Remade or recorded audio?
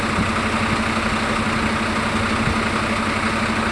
recorded